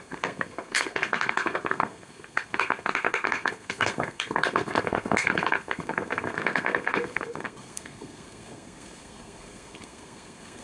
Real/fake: fake